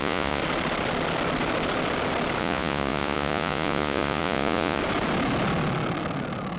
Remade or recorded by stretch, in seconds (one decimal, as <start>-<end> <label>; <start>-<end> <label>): 0.0-0.4 remade; 0.4-2.4 recorded; 2.4-4.8 remade; 4.8-6.6 recorded